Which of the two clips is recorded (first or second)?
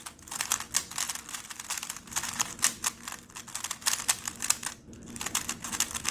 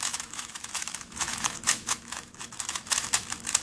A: first